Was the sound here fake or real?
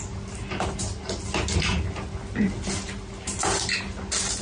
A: real